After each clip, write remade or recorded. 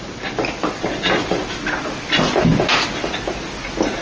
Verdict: recorded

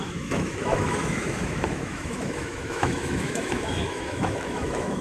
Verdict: remade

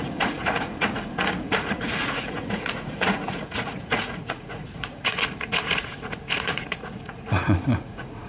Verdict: remade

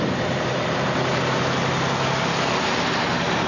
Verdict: recorded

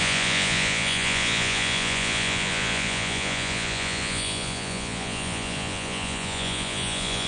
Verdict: remade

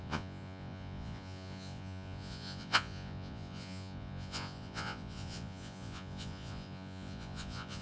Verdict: remade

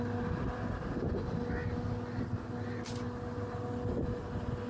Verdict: recorded